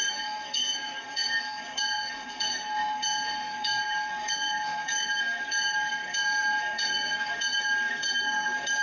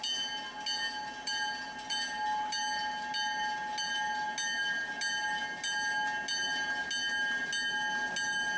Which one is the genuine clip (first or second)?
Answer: second